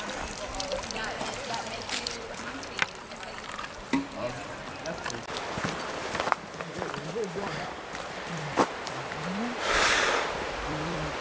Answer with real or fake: fake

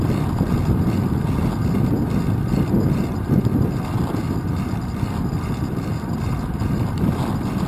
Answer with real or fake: real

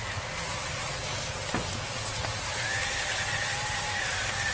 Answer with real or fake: real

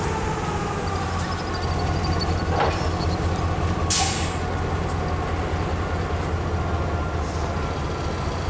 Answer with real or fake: real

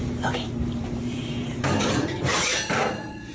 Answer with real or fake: fake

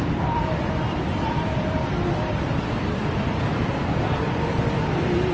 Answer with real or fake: fake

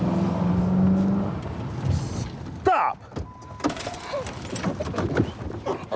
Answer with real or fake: real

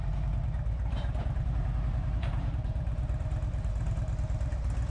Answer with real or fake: fake